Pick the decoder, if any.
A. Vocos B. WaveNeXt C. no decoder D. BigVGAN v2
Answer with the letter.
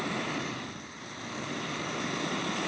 C